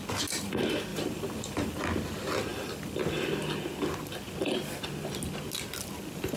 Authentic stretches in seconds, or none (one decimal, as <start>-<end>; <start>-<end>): 0.0-0.9; 1.8-2.5; 3.1-6.4